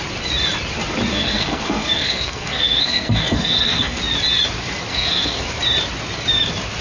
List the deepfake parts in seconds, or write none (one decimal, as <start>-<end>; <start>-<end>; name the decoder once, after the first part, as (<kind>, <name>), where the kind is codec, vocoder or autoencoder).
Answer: 1.1-4.0 (codec, SNAC); 4.9-5.4